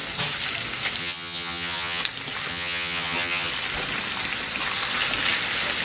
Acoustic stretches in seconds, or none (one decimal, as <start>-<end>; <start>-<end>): 0.0-1.0; 2.0-2.5; 3.5-5.8